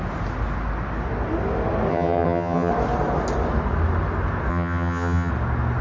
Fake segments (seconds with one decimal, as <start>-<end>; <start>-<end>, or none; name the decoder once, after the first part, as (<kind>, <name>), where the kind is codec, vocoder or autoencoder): 1.9-2.7 (vocoder, HiFi-GAN); 4.5-5.3